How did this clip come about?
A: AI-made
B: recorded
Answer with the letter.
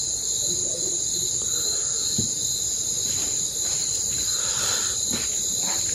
B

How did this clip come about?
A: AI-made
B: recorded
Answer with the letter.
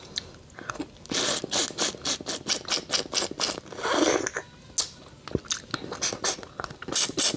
B